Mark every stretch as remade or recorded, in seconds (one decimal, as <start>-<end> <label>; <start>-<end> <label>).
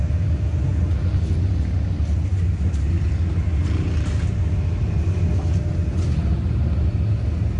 0.0-7.6 recorded